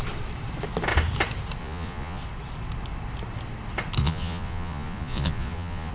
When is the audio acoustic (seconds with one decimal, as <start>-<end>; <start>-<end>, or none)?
0.0-1.6; 2.2-4.0